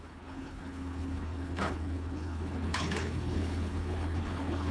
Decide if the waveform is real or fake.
fake